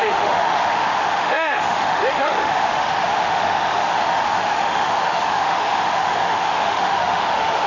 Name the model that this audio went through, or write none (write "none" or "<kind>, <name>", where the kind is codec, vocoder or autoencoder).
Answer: autoencoder, DAC-VAE